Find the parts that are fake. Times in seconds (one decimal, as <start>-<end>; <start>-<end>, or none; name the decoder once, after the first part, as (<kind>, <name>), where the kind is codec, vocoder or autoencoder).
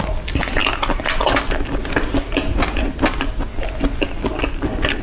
none